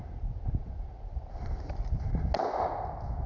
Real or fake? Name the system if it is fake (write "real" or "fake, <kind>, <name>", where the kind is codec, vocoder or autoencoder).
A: real